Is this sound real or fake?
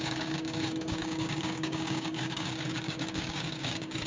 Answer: fake